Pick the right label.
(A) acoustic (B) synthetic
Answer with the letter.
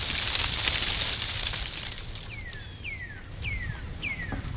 A